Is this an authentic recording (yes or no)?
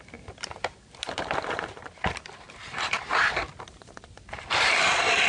no